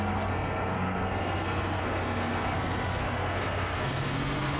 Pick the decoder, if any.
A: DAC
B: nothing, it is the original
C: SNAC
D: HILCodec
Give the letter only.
C